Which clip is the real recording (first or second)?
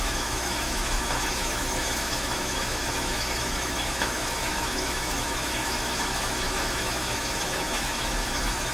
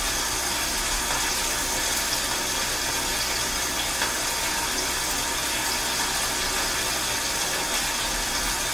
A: second